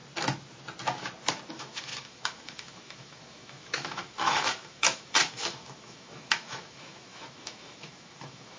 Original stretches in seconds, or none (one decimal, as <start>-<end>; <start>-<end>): 0.0-1.5